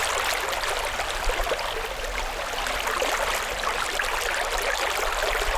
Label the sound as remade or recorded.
recorded